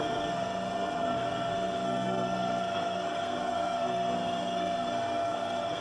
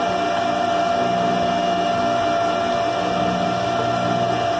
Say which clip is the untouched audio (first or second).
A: second